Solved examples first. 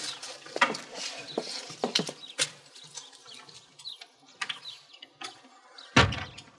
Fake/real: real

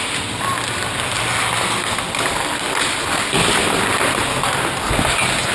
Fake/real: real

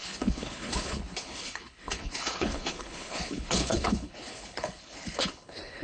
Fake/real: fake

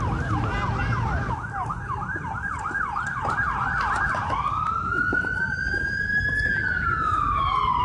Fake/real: real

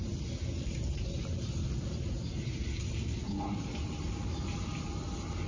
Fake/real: real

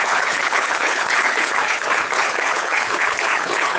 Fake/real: fake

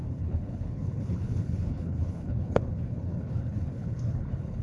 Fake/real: fake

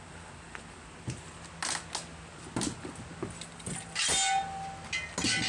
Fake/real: real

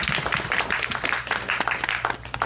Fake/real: real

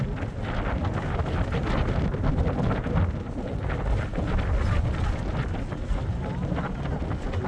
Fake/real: real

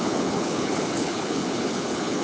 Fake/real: fake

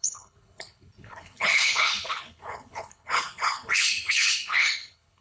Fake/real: fake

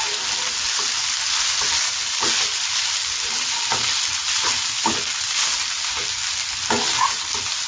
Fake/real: real